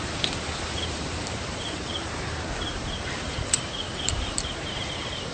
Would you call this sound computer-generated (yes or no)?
yes